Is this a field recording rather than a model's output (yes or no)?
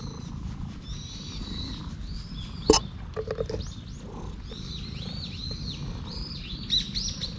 yes